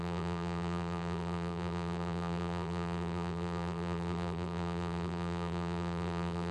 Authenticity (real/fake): fake